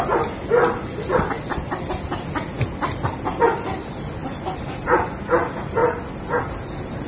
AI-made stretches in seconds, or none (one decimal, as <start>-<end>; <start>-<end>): 4.2-5.1